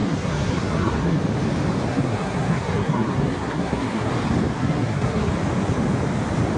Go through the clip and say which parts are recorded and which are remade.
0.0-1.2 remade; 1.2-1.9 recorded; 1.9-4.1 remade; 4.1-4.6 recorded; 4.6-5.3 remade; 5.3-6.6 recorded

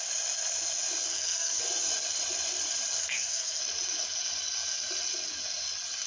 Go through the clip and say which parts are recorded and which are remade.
0.0-1.1 recorded; 1.1-1.6 remade; 1.6-3.0 recorded; 3.0-3.6 remade; 3.6-6.1 recorded

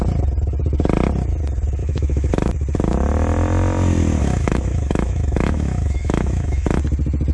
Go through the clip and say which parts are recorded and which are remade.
0.0-1.8 recorded; 1.8-2.3 remade; 2.3-4.2 recorded; 4.2-6.8 remade; 6.8-7.3 recorded

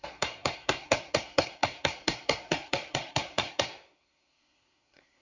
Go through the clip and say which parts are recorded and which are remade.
0.0-5.2 remade

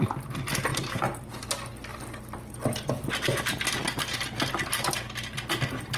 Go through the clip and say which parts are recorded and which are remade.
0.0-0.7 recorded; 0.7-1.3 remade; 1.3-1.9 recorded; 1.9-2.9 remade; 2.9-6.0 recorded

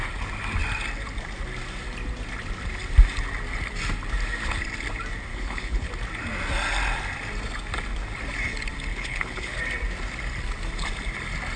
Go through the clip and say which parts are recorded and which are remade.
0.0-5.3 recorded; 5.3-5.9 remade; 5.9-8.9 recorded; 8.9-9.6 remade; 9.6-11.6 recorded